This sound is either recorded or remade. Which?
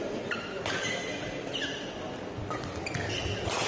recorded